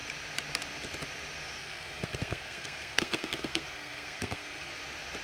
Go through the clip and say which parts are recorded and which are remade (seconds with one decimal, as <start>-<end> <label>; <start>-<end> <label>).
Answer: 0.0-1.6 recorded; 1.6-4.7 remade; 4.7-5.2 recorded